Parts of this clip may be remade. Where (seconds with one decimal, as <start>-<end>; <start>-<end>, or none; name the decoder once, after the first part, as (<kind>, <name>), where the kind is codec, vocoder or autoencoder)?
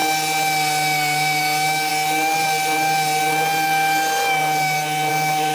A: 1.4-1.9 (autoencoder, DAC-VAE); 5.1-5.5